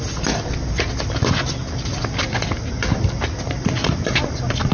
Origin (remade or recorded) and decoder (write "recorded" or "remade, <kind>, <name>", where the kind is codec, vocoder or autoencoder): recorded